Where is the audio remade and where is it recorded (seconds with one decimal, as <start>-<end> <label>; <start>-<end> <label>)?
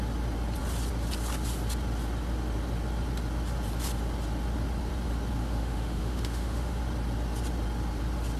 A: 0.0-5.4 recorded; 5.4-6.8 remade; 6.8-8.4 recorded